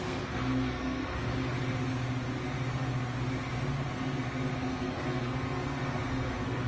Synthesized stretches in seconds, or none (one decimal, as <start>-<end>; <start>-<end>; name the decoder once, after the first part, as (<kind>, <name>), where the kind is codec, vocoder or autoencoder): 0.0-1.3 (codec, SNAC); 3.9-6.7